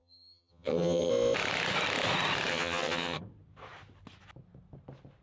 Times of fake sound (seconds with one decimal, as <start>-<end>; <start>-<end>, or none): 0.0-1.1; 2.5-3.2